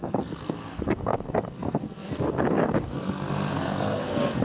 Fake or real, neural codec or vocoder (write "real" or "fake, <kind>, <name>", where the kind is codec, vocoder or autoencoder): fake, codec, SNAC